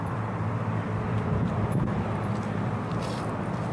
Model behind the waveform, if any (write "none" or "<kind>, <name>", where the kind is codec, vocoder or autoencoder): vocoder, BigVGAN v2